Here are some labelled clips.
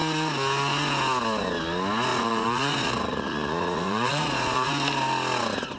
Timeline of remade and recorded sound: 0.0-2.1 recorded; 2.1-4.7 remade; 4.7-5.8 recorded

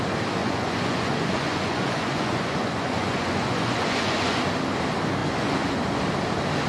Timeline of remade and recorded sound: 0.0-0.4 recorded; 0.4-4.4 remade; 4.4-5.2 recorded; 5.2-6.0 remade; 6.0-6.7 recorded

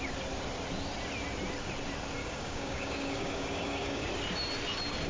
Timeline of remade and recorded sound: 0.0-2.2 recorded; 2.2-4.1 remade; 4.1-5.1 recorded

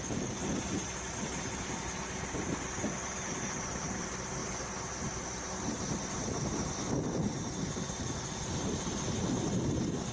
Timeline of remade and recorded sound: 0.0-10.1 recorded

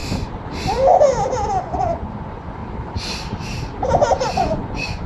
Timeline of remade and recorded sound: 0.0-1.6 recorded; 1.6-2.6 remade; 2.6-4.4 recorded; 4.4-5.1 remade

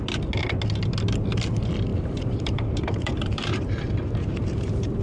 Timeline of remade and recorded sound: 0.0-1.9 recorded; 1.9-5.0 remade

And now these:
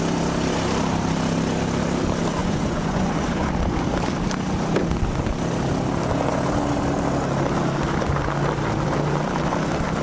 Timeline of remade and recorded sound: 0.0-2.4 recorded; 2.4-3.5 remade; 3.5-10.0 recorded